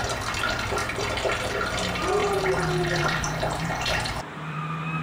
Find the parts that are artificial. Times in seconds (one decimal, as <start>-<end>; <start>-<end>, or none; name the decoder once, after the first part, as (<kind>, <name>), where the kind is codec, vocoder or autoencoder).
2.2-4.6 (vocoder, BigVGAN v2)